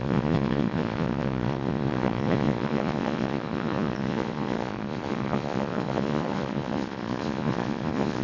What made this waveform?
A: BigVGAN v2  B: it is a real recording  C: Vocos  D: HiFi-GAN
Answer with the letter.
C